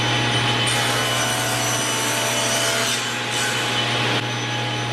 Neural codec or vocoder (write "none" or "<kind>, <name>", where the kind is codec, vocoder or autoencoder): none